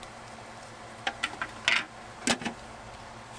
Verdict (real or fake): real